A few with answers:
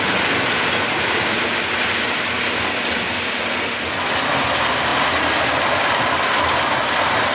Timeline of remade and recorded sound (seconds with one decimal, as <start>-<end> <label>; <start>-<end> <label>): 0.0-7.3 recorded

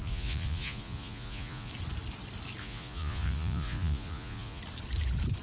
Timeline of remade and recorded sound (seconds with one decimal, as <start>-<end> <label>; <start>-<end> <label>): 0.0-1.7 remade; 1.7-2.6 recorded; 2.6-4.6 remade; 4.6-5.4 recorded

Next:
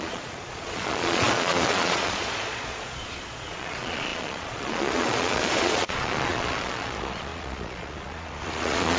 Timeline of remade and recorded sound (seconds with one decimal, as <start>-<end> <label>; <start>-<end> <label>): 0.0-9.0 remade